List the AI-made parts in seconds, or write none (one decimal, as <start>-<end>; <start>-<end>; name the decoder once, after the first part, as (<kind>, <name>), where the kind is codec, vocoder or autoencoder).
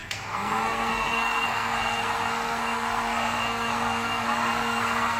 0.0-5.2 (codec, SNAC)